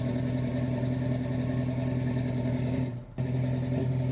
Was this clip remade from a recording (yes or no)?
no